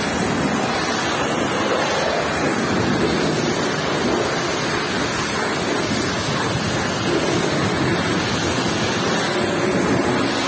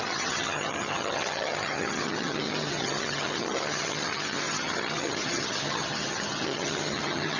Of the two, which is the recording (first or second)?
first